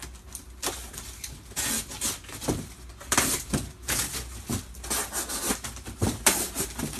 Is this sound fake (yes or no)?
no